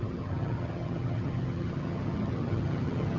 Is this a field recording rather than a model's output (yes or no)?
no